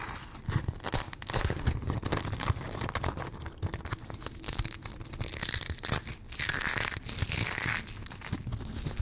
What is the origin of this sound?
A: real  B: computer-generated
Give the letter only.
A